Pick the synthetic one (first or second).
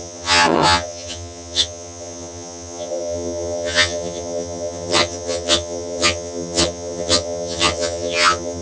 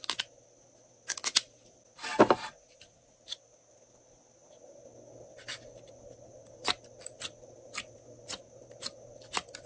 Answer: first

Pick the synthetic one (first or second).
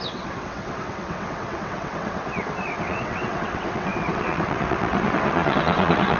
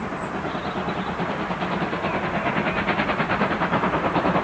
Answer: first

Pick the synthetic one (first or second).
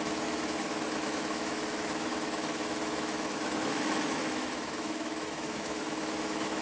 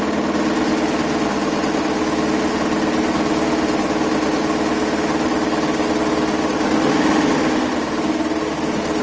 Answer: first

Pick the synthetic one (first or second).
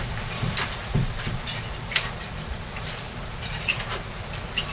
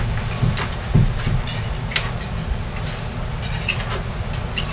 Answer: first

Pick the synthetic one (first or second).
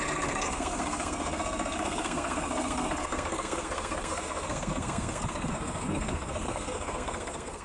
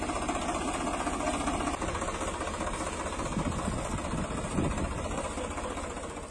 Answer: first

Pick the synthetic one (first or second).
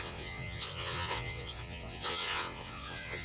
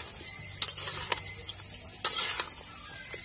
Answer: first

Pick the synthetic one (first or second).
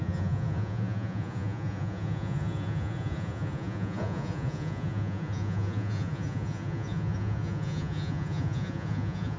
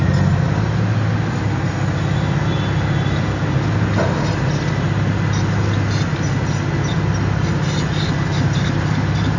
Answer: first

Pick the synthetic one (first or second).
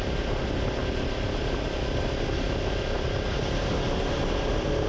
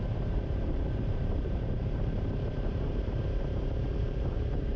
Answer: second